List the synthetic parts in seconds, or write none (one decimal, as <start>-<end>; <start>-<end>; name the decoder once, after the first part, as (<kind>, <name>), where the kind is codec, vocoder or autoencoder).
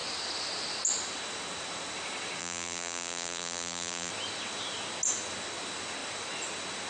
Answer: 2.4-4.1 (vocoder, BigVGAN v2)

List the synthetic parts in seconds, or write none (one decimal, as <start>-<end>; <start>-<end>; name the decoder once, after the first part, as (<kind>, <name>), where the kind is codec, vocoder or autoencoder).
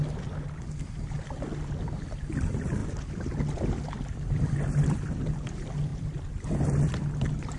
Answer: none